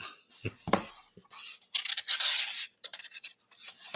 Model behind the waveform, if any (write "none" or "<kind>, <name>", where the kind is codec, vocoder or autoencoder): none